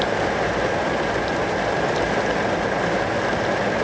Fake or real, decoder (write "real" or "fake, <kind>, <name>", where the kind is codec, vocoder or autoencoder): real